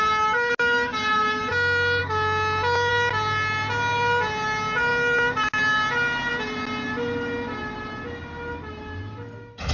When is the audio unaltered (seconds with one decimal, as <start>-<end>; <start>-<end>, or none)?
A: 0.0-9.7